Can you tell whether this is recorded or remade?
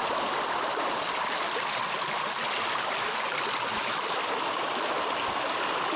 recorded